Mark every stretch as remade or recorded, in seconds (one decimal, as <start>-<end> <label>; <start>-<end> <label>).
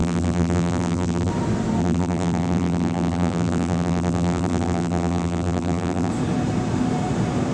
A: 0.0-1.3 remade; 1.3-1.8 recorded; 1.8-6.1 remade; 6.1-7.5 recorded